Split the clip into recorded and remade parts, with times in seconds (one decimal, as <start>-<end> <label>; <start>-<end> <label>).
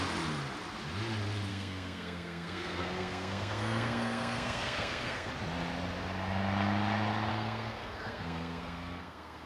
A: 0.0-1.5 recorded; 1.5-5.3 remade; 5.3-7.3 recorded; 7.3-9.5 remade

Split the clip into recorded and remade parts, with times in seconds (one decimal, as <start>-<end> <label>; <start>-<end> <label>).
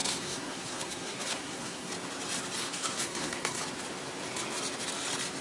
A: 0.0-1.9 remade; 1.9-2.6 recorded; 2.6-3.6 remade; 3.6-5.4 recorded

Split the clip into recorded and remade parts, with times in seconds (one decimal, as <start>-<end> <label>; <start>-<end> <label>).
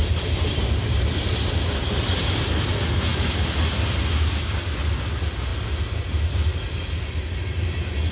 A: 0.0-2.2 remade; 2.2-8.1 recorded